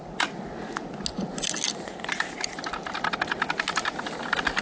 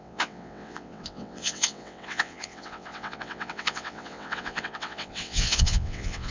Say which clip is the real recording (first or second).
first